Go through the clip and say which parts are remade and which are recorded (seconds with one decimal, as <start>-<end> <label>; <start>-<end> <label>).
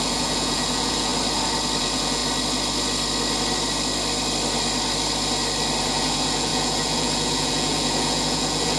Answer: 0.0-1.1 remade; 1.1-1.8 recorded; 1.8-2.2 remade; 2.2-5.8 recorded; 5.8-8.8 remade